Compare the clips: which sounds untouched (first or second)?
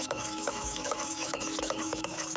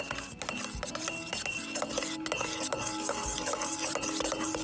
second